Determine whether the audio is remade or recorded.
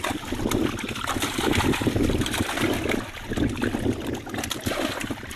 recorded